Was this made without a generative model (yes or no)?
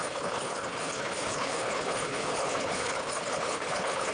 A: no